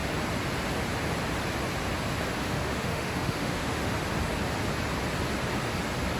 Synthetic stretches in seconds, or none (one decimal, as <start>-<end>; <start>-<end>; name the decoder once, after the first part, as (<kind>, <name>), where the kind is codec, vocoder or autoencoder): 2.4-3.9 (autoencoder, DAC-VAE)